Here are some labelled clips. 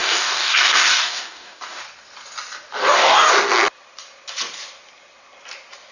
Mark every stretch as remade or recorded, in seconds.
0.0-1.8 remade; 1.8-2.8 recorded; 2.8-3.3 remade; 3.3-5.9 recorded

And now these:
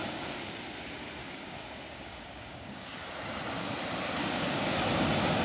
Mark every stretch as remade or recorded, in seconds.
0.0-0.5 remade; 0.5-1.2 recorded; 1.2-3.1 remade; 3.1-4.2 recorded; 4.2-4.8 remade; 4.8-5.4 recorded

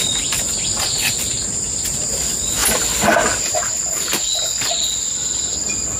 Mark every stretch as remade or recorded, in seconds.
0.0-6.0 recorded